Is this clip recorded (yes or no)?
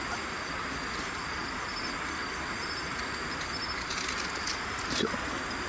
yes